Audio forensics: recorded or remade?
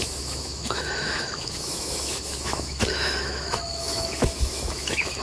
remade